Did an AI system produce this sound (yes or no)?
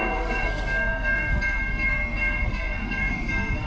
yes